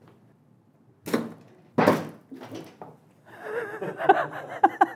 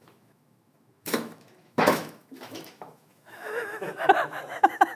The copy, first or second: second